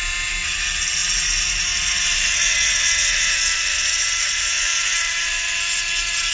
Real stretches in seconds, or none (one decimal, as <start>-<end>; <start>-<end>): 0.0-6.3